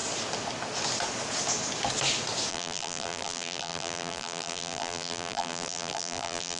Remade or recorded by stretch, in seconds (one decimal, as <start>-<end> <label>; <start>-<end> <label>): 0.0-2.5 recorded; 2.5-6.6 remade